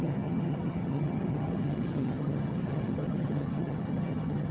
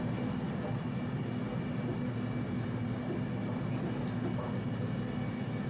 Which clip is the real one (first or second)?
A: second